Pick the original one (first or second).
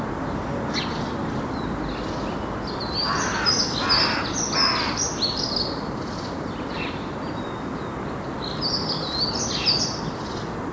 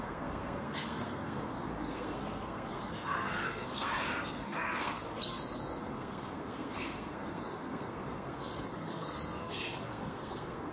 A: first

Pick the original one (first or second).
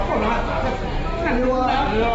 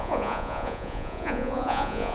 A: first